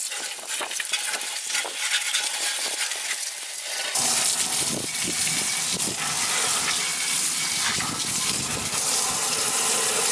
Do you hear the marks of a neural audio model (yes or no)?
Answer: no